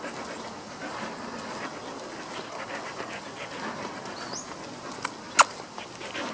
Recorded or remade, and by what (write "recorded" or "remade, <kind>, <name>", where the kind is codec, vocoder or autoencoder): recorded